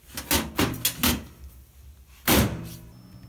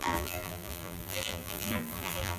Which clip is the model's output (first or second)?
second